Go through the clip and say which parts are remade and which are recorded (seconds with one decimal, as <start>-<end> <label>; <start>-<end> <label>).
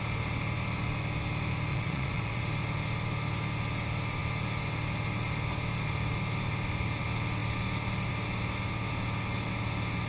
0.0-1.7 recorded; 1.7-2.4 remade; 2.4-10.1 recorded